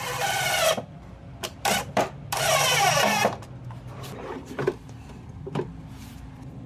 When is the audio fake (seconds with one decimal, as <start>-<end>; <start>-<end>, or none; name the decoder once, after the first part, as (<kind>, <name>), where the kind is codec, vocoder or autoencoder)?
none